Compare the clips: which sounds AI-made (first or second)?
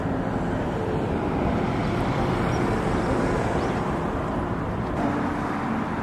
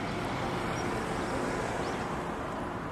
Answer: first